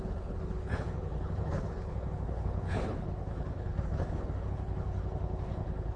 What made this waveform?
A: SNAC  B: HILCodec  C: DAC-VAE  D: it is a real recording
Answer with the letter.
B